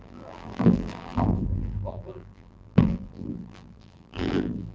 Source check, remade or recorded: remade